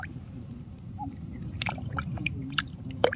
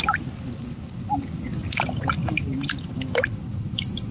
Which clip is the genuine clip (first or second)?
second